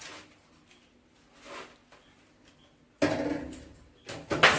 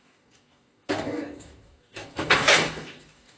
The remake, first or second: second